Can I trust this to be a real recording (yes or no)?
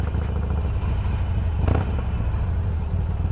yes